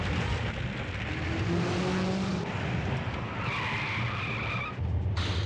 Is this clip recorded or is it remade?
recorded